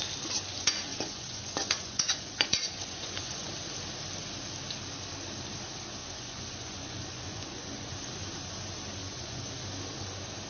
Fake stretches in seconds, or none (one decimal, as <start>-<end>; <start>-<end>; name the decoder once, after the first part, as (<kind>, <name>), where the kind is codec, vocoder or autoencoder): 0.5-3.5 (vocoder, Vocos); 6.0-7.9; 9.0-9.5